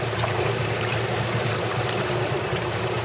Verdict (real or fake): fake